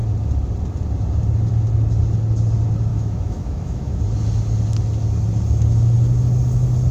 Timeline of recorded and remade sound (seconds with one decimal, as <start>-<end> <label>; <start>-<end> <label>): 0.0-2.9 recorded; 2.9-4.0 remade; 4.0-6.9 recorded